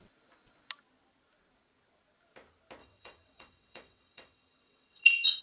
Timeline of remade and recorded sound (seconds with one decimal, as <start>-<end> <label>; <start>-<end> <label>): 0.0-2.8 recorded; 2.8-5.4 remade